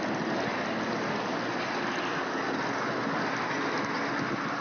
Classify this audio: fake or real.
real